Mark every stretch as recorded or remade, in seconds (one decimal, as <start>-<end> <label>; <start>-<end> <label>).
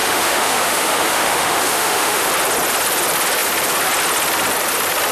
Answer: 0.0-2.3 remade; 2.3-5.1 recorded